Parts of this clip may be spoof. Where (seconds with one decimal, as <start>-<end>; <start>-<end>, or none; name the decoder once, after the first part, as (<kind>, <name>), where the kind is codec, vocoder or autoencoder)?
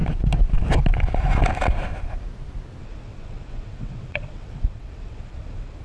2.8-5.8 (vocoder, WaveNeXt)